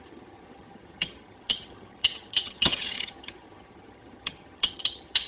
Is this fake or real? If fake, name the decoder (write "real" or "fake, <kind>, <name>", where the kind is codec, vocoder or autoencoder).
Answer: fake, vocoder, HiFi-GAN